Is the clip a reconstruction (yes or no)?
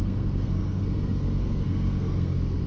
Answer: yes